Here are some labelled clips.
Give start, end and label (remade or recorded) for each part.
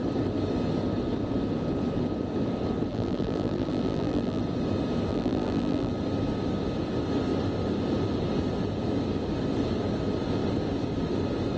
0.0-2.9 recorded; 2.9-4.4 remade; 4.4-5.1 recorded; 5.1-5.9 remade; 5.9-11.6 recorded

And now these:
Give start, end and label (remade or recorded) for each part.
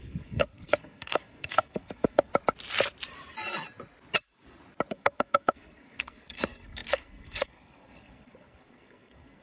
0.0-2.3 remade; 2.3-4.9 recorded; 4.9-9.4 remade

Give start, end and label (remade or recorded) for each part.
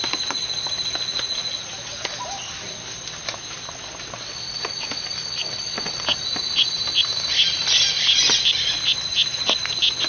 0.0-10.1 recorded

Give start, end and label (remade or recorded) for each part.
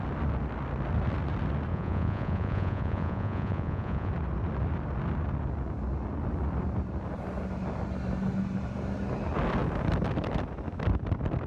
0.0-1.7 recorded; 1.7-4.1 remade; 4.1-11.5 recorded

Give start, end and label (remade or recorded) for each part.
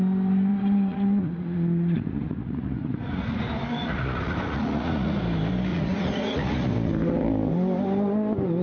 0.0-0.5 recorded; 0.5-3.4 remade; 3.4-3.8 recorded; 3.8-5.2 remade; 5.2-5.7 recorded; 5.7-6.7 remade; 6.7-8.6 recorded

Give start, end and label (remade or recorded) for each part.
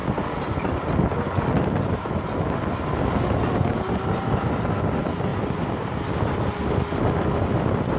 0.0-8.0 recorded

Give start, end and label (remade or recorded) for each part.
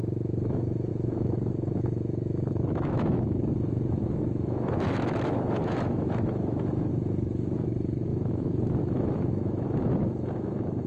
0.0-10.9 remade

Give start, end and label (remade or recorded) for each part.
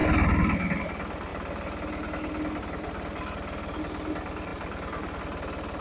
0.0-5.8 recorded